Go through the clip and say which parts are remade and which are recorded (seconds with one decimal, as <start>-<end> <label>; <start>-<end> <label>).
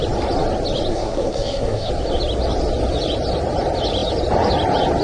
0.0-0.9 recorded; 0.9-1.9 remade; 1.9-5.0 recorded